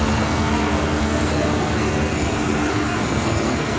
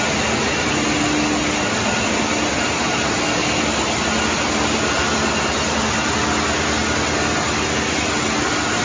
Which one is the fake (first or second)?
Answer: first